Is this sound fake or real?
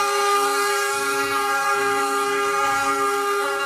fake